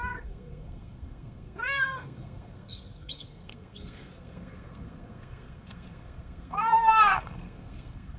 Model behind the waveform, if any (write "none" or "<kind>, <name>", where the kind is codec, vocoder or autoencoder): codec, SNAC